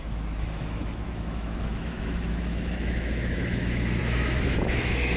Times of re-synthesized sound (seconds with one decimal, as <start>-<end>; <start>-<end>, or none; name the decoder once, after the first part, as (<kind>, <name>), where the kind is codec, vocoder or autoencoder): 0.0-5.2 (autoencoder, DAC-VAE)